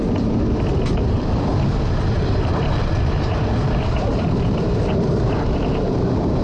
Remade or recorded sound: remade